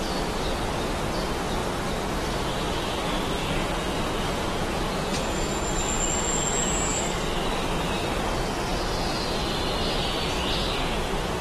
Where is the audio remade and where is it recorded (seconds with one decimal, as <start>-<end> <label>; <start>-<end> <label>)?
0.0-3.4 recorded; 3.4-7.0 remade; 7.0-11.4 recorded